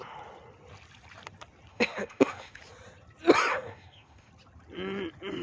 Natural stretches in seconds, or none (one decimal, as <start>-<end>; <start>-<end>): 0.0-1.7; 2.6-3.5; 4.3-5.4

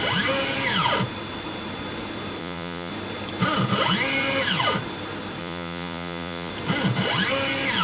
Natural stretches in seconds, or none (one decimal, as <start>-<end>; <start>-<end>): 0.0-2.4; 2.9-5.4; 6.5-7.8